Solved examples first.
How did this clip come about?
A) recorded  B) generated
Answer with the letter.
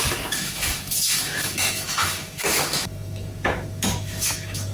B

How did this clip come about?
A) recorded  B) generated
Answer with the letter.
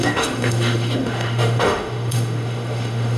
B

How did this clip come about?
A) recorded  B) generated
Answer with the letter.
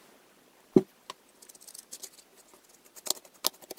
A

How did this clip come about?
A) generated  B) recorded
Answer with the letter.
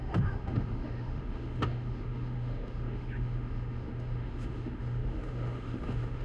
A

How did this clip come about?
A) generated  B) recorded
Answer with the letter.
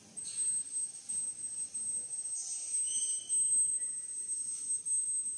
B